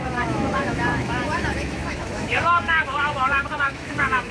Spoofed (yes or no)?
yes